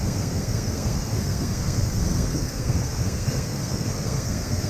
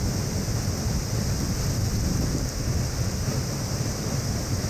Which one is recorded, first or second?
second